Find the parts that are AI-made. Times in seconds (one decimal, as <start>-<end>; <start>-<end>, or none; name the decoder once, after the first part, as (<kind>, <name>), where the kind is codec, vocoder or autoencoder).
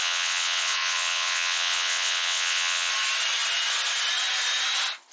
0.0-2.9 (vocoder, WaveNeXt)